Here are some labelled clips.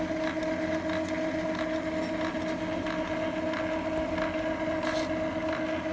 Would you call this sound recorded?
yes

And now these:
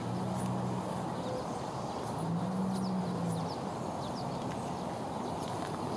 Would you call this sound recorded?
yes